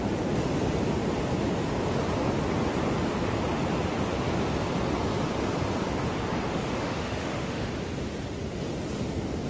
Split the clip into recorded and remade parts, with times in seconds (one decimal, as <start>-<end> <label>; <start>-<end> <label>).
0.0-6.5 recorded; 6.5-7.7 remade; 7.7-9.5 recorded